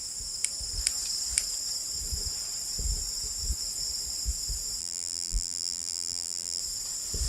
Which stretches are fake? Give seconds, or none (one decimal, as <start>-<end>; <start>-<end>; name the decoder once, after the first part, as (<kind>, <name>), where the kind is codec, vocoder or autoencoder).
4.8-6.6 (vocoder, BigVGAN v2)